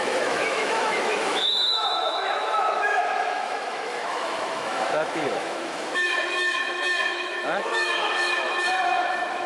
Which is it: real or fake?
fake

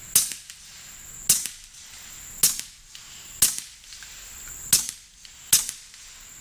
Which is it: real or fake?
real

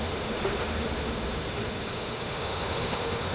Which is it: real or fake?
fake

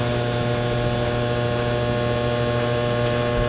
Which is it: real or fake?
real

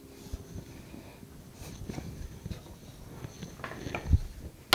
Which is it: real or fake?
real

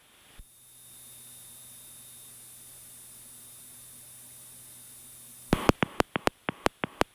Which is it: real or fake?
real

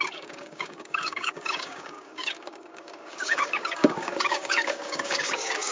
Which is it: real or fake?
fake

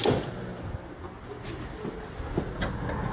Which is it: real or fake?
real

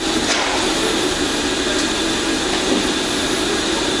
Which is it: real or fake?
real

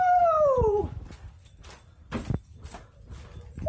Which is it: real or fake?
real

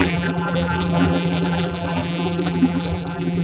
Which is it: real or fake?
fake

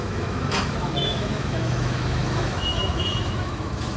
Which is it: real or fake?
fake